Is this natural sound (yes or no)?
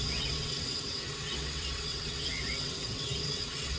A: no